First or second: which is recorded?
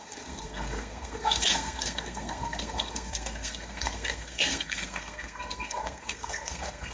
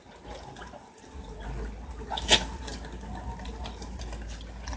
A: second